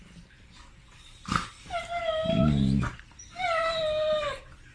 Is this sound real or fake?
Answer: real